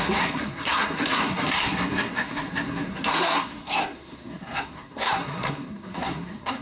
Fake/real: fake